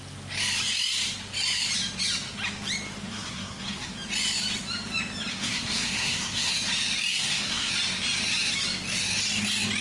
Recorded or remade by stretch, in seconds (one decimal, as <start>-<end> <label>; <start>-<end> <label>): 0.0-3.1 recorded; 3.1-3.9 remade; 3.9-5.3 recorded; 5.3-6.5 remade; 6.5-7.1 recorded; 7.1-7.7 remade; 7.7-9.8 recorded